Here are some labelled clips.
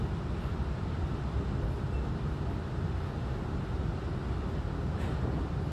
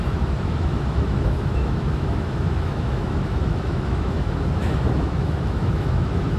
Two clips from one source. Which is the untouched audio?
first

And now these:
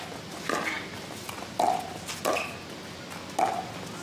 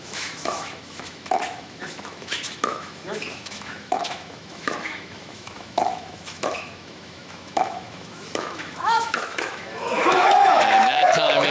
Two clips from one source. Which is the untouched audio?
first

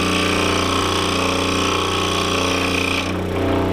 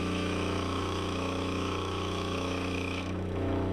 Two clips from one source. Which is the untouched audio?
first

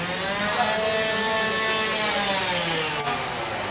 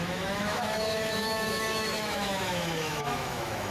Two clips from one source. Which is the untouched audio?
first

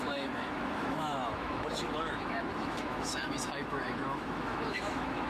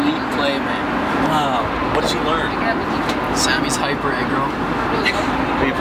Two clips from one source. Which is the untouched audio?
second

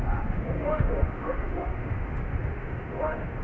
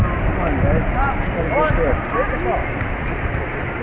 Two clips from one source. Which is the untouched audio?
second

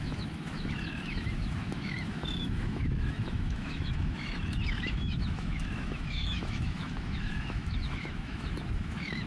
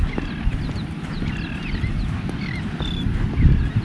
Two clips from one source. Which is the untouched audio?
second